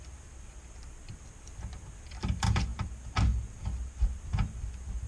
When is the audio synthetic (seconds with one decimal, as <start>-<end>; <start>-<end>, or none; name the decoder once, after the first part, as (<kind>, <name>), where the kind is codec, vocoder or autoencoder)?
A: none